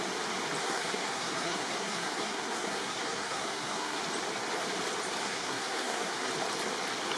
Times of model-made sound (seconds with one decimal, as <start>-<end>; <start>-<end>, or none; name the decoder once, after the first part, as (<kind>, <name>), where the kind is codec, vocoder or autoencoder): 0.6-4.0 (codec, SNAC); 5.2-6.3